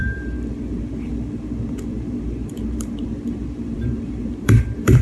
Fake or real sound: fake